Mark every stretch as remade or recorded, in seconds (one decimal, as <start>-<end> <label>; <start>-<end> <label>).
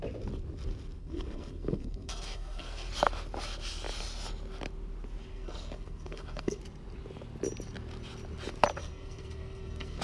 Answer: 0.0-1.0 recorded; 1.0-2.9 remade; 2.9-5.3 recorded; 5.3-6.6 remade; 6.6-8.8 recorded; 8.8-10.0 remade